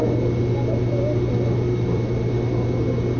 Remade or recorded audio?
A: recorded